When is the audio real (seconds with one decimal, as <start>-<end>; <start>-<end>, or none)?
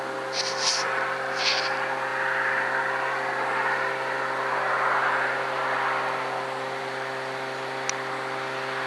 0.0-8.9